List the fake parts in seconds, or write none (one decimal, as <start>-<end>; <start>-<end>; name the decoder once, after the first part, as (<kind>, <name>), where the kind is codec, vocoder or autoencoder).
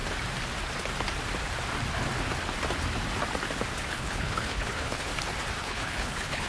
3.9-5.1 (codec, HILCodec); 5.6-6.5